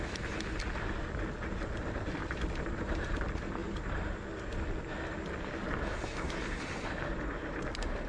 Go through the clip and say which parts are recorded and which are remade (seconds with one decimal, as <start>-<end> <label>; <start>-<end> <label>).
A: 0.0-2.2 recorded; 2.2-3.2 remade; 3.2-3.6 recorded; 3.6-4.2 remade; 4.2-5.9 recorded; 5.9-7.6 remade; 7.6-8.1 recorded